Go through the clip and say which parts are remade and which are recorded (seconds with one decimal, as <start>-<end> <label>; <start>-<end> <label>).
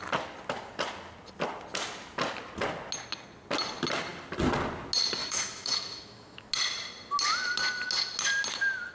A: 0.0-5.2 recorded; 5.2-6.5 remade; 6.5-8.9 recorded